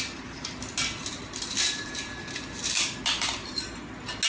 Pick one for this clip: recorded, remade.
recorded